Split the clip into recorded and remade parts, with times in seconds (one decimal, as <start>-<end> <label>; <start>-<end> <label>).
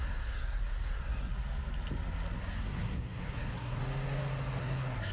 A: 0.0-1.3 remade; 1.3-2.6 recorded; 2.6-3.8 remade; 3.8-4.6 recorded; 4.6-5.1 remade